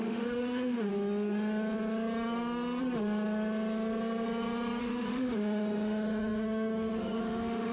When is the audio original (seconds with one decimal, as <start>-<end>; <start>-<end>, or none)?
0.9-4.8

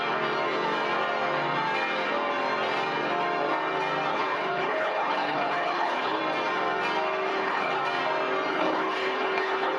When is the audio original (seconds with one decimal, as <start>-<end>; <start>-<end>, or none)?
0.0-4.1; 6.2-7.3; 7.8-8.5

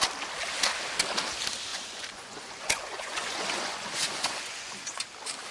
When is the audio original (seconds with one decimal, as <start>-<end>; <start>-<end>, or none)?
0.0-1.7; 5.0-5.5

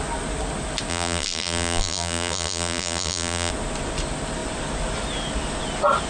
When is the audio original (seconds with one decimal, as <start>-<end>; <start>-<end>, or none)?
0.0-0.9; 3.5-6.1